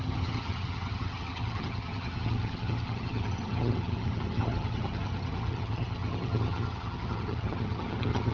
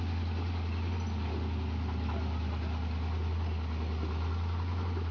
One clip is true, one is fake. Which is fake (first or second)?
first